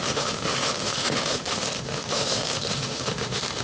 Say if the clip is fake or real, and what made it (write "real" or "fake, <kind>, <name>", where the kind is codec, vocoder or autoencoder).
fake, autoencoder, DAC-VAE